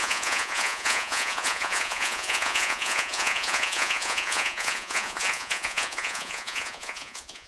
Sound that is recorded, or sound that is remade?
remade